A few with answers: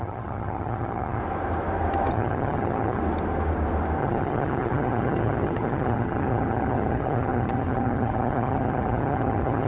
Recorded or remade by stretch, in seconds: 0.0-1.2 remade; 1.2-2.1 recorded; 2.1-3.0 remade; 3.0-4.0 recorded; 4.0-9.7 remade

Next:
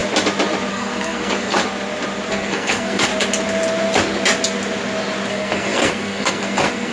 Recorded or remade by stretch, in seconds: 0.0-0.7 recorded; 0.7-1.6 remade; 1.6-2.3 recorded; 2.3-3.1 remade; 3.1-5.3 recorded; 5.3-6.9 remade

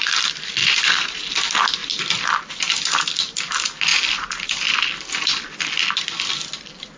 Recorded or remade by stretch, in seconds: 0.0-0.6 recorded; 0.6-1.2 remade; 1.2-7.0 recorded